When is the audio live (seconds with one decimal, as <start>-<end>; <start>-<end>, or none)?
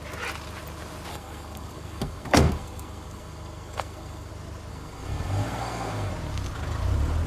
0.0-1.1; 4.3-4.7; 6.1-7.3